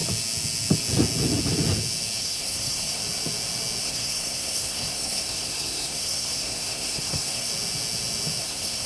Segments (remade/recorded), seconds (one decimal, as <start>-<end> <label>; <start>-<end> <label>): 0.0-2.2 recorded; 2.2-3.0 remade; 3.0-3.8 recorded; 3.8-7.5 remade; 7.5-8.4 recorded; 8.4-8.9 remade